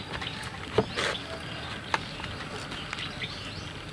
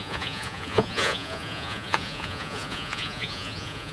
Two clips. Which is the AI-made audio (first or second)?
second